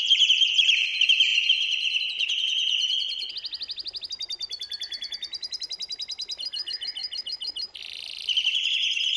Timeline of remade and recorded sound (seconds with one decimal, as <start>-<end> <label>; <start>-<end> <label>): 0.0-9.2 recorded